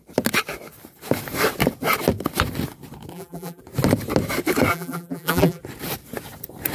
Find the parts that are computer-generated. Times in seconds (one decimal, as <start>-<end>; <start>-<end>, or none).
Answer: 3.1-3.6; 4.7-5.6